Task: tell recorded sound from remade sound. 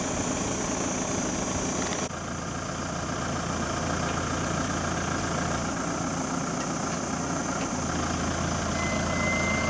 recorded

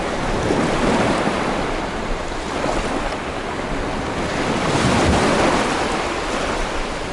recorded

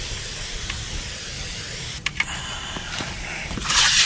remade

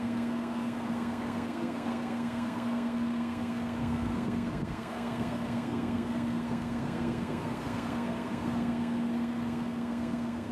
remade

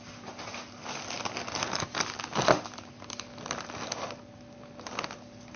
recorded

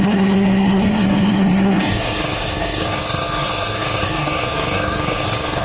remade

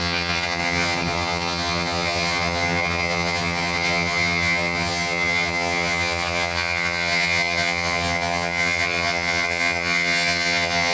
remade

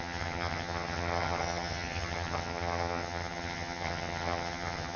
remade